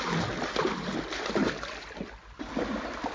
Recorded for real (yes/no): yes